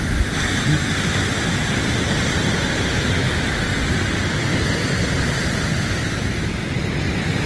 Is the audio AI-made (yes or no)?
no